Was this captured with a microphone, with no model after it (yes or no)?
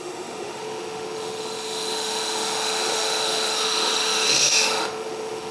no